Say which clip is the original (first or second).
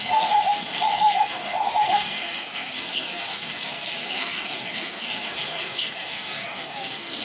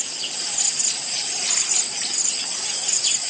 second